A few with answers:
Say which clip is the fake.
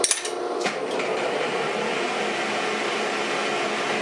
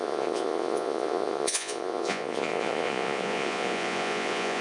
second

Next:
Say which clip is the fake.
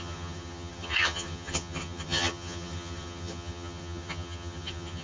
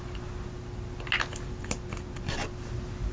first